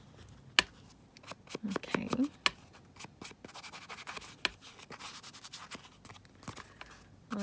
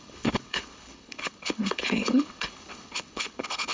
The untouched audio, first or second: first